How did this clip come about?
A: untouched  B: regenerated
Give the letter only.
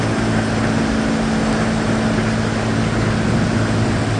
A